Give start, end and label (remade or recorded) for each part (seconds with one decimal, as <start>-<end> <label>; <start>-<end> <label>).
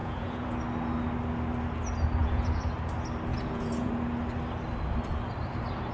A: 0.0-0.5 remade; 0.5-2.2 recorded; 2.2-2.7 remade; 2.7-3.3 recorded; 3.3-3.9 remade; 3.9-5.9 recorded